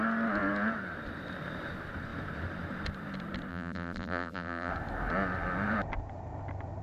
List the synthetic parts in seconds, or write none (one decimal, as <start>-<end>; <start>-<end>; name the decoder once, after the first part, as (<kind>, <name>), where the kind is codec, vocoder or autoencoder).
3.5-4.7 (vocoder, BigVGAN v2)